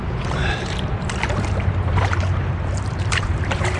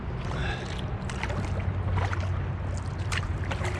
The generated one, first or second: first